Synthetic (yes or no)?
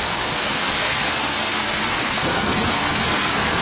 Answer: yes